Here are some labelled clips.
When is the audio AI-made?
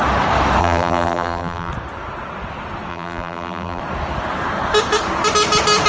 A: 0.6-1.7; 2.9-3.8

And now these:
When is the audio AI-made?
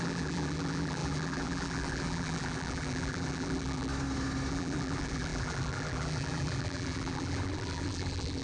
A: 0.0-3.9; 4.5-8.4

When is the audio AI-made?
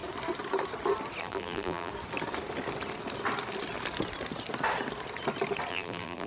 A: 1.2-1.9; 5.7-6.3